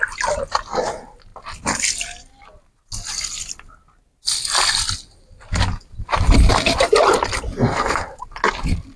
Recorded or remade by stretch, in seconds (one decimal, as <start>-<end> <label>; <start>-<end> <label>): 0.0-9.0 recorded